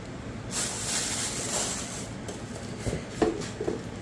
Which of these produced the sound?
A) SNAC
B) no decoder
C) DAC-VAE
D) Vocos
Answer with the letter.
B